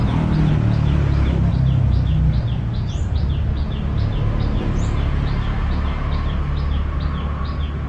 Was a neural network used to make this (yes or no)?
no